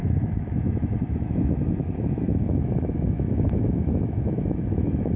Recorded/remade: remade